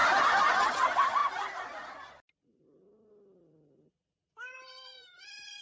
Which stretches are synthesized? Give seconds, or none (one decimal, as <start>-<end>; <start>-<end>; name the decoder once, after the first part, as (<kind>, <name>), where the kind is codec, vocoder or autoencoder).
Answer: none